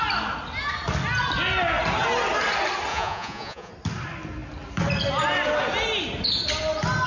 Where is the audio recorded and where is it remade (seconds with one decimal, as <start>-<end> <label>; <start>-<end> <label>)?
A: 0.0-2.9 recorded; 2.9-3.7 remade; 3.7-7.1 recorded